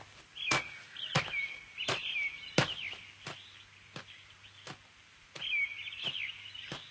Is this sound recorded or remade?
recorded